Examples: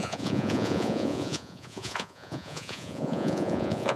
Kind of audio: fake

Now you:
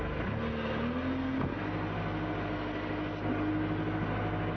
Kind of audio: real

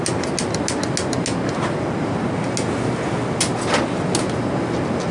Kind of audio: real